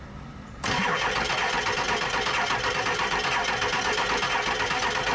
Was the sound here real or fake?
real